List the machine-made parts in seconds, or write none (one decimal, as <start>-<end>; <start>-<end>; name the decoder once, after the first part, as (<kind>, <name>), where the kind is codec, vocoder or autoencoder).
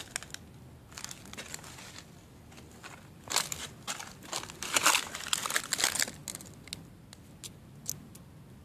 none